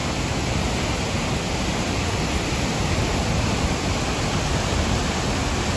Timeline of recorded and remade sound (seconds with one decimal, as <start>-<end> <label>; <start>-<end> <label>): 0.0-5.8 recorded